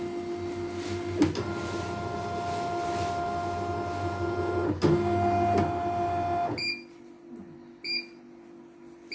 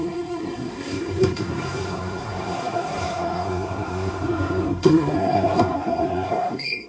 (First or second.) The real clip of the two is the first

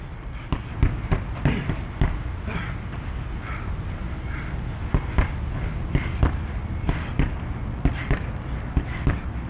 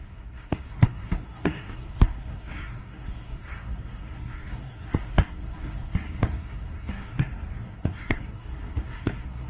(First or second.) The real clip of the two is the first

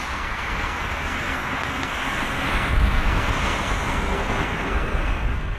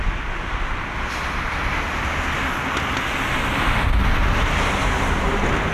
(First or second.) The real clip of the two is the second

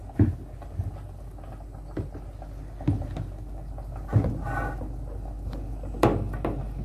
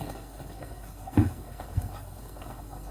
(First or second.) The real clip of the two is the first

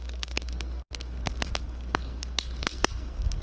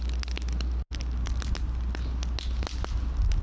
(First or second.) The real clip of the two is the second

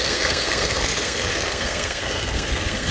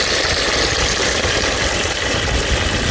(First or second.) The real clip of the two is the second